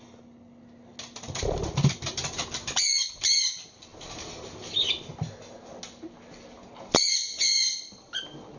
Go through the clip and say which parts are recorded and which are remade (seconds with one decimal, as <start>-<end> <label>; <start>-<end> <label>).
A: 0.0-8.6 recorded